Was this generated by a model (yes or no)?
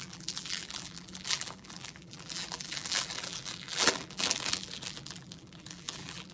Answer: yes